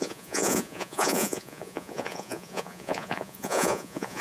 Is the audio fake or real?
fake